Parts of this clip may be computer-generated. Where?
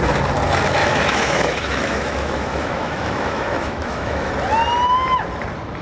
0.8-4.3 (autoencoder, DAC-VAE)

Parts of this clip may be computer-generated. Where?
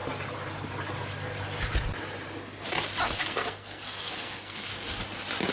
3.2-4.7 (codec, SNAC)